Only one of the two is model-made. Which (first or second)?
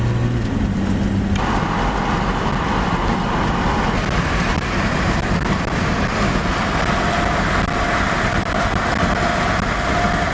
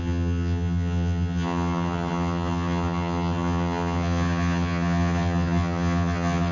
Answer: second